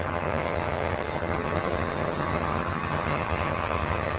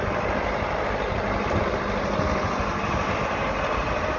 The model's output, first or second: first